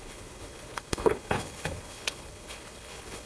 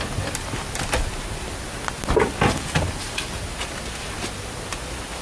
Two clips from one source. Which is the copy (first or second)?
first